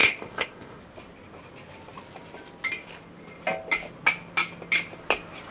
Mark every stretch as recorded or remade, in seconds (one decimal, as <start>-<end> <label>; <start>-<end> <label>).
0.0-0.8 remade; 0.8-5.5 recorded